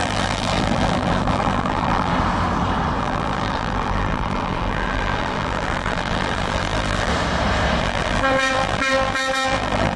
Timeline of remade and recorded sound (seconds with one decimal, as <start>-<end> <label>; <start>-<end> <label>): 0.0-2.1 remade; 2.1-3.0 recorded; 3.0-7.1 remade; 7.1-7.8 recorded; 7.8-10.0 remade